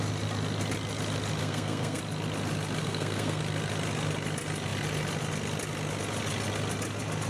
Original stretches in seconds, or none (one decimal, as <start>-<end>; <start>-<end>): 0.0-1.4; 2.0-2.8; 3.4-7.3